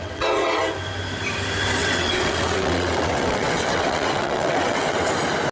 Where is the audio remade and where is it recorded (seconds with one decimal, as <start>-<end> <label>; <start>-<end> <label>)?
0.0-0.6 remade; 0.6-1.8 recorded; 1.8-5.1 remade; 5.1-5.5 recorded